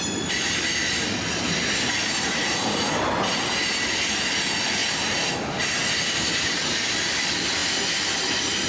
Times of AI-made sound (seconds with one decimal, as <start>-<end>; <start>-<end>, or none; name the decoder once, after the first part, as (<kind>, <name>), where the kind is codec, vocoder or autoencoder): none